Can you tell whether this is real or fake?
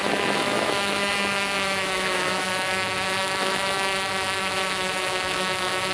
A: fake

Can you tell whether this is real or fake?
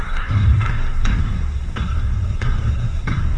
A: fake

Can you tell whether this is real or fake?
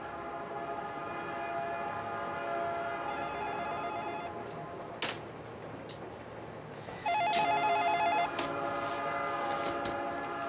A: real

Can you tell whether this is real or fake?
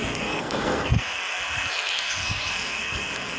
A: fake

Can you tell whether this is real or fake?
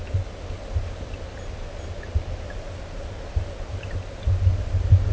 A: real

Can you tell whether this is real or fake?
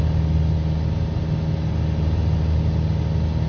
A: real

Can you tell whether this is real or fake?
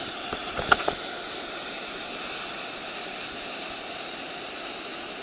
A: real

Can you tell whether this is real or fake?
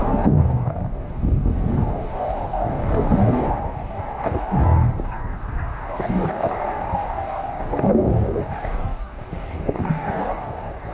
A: fake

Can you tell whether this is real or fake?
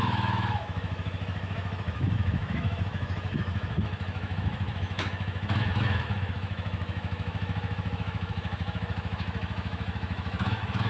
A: fake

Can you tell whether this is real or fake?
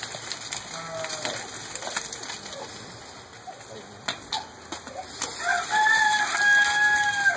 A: real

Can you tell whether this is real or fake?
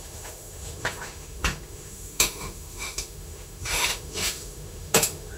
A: fake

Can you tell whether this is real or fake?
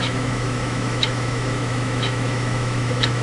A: fake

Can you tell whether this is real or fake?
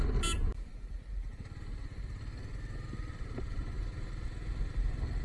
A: real